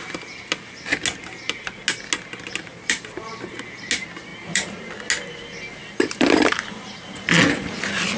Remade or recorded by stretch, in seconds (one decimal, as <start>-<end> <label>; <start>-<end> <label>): 0.0-2.7 recorded; 2.7-3.5 remade; 3.5-4.3 recorded; 4.3-4.8 remade; 4.8-5.8 recorded; 5.8-7.2 remade; 7.2-8.2 recorded